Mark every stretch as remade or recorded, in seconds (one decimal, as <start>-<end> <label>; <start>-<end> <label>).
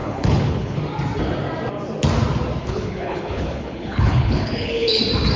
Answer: 0.0-0.8 remade; 0.8-2.6 recorded; 2.6-5.0 remade; 5.0-5.4 recorded